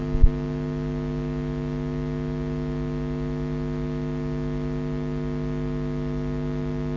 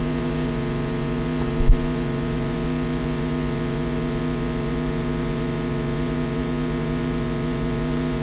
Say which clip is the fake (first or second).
second